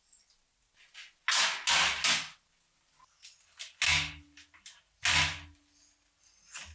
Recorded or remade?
recorded